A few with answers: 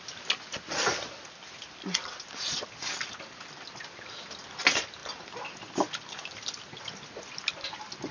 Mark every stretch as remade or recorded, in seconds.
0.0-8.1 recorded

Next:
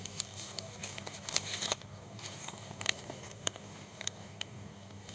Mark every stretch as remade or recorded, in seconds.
0.0-5.1 remade

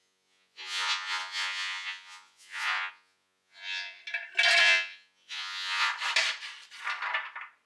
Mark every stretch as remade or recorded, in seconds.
0.0-4.0 remade; 4.0-4.6 recorded; 4.6-5.9 remade; 5.9-7.7 recorded

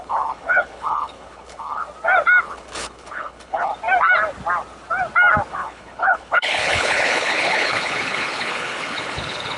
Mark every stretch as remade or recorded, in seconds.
0.0-1.8 remade; 1.8-2.4 recorded; 2.4-3.7 remade; 3.7-5.5 recorded; 5.5-9.6 remade